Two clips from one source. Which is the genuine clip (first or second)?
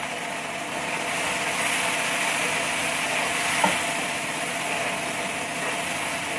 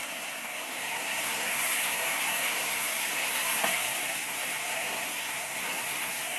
first